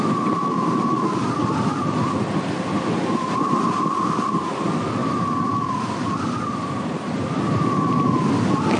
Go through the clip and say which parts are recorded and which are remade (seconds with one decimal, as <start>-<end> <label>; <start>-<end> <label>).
0.0-5.0 recorded; 5.0-7.2 remade; 7.2-8.8 recorded